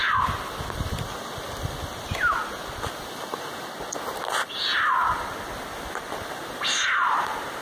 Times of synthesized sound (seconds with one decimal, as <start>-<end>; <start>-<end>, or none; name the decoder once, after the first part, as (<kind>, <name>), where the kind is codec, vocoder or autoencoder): none